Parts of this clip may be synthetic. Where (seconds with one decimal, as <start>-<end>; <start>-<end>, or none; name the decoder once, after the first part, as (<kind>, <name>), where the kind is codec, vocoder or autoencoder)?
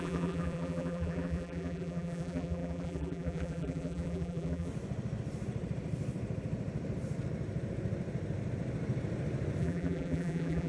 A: 0.0-4.7 (vocoder, BigVGAN v2); 9.6-10.7